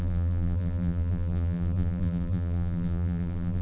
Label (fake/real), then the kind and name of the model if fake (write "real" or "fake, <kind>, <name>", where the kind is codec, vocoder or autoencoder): fake, vocoder, BigVGAN v2